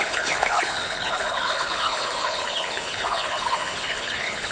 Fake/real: fake